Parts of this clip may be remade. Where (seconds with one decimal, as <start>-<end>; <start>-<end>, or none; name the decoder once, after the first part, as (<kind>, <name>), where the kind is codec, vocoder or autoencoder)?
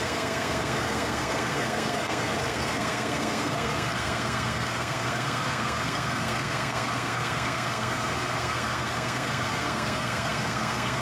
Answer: 0.0-11.0 (codec, SNAC)